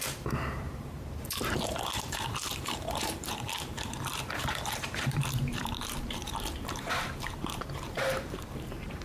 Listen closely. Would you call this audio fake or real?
fake